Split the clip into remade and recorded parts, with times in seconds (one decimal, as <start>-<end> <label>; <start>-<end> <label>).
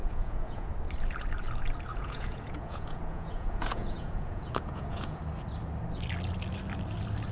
0.0-0.7 remade; 0.7-1.9 recorded; 1.9-5.2 remade; 5.2-7.3 recorded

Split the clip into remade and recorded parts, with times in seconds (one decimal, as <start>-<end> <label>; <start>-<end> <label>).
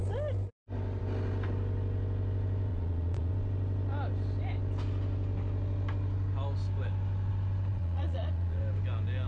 0.0-2.7 recorded; 2.7-3.3 remade; 3.3-7.7 recorded; 7.7-8.6 remade; 8.6-9.3 recorded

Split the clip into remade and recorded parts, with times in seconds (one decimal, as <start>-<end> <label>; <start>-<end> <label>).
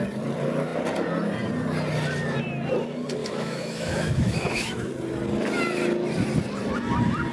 0.0-3.2 recorded; 3.2-4.9 remade; 4.9-7.3 recorded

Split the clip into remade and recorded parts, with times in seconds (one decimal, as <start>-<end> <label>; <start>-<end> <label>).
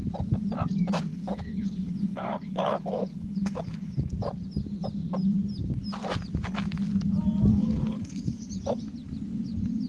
0.0-1.1 recorded; 1.1-4.1 remade; 4.1-7.5 recorded; 7.5-8.5 remade; 8.5-9.9 recorded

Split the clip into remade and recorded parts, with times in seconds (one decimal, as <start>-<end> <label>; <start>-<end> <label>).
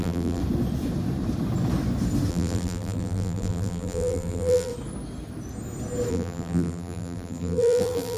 0.0-0.4 remade; 0.4-2.3 recorded; 2.3-4.7 remade; 4.7-6.1 recorded; 6.1-8.2 remade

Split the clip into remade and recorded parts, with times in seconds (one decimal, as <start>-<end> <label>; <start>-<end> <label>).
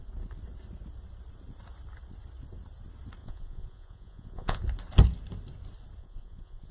0.0-3.2 recorded; 3.2-4.6 remade; 4.6-6.0 recorded; 6.0-6.7 remade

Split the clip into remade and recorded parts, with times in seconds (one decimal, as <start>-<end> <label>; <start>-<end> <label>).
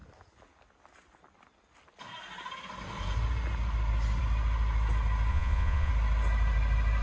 0.0-5.3 recorded; 5.3-5.9 remade; 5.9-7.0 recorded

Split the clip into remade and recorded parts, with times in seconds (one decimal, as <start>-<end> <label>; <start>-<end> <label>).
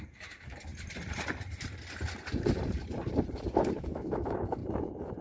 0.0-0.7 remade; 0.7-3.8 recorded; 3.8-4.6 remade; 4.6-5.2 recorded